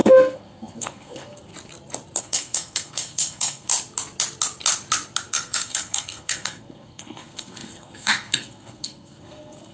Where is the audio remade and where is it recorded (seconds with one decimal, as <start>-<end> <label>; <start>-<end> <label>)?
0.0-1.5 remade; 1.5-2.2 recorded; 2.2-3.7 remade; 3.7-5.3 recorded; 5.3-9.7 remade